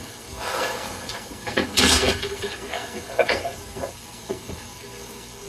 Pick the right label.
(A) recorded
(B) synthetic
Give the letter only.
B